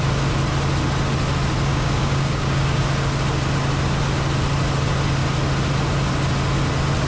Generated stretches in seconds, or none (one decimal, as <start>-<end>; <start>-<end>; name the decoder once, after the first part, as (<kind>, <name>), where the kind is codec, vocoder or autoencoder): 1.7-2.8 (codec, DAC)